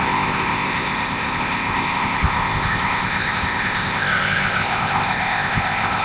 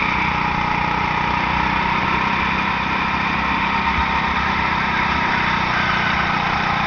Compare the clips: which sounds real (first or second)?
second